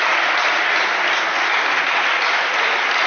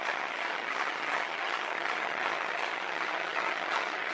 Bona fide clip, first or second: first